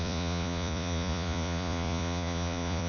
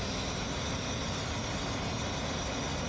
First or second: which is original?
second